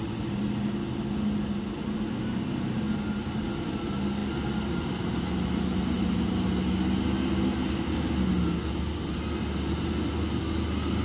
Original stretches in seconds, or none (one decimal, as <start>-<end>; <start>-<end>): 0.0-11.0